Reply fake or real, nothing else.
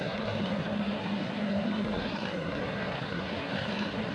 fake